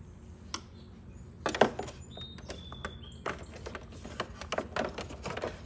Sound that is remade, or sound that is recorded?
recorded